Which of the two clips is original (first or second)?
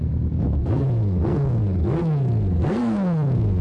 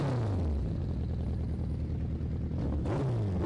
second